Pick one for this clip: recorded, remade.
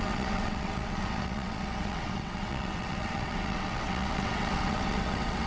remade